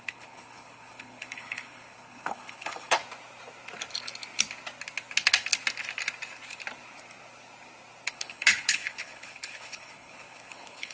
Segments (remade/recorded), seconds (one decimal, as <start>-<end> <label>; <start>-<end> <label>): 0.0-3.0 remade; 3.0-8.1 recorded; 8.1-10.9 remade

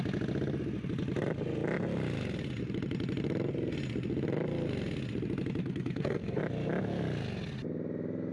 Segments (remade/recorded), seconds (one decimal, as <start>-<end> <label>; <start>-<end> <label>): 0.0-5.6 recorded; 5.6-6.4 remade; 6.4-8.3 recorded